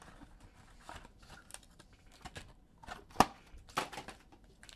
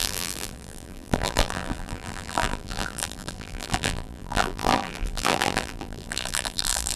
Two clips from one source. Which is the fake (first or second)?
second